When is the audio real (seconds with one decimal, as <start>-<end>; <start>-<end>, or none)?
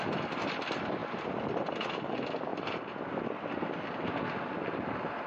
0.0-5.3